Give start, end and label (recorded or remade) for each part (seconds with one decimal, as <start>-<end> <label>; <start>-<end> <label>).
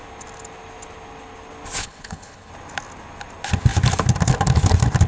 0.0-1.8 recorded; 1.8-2.5 remade; 2.5-5.1 recorded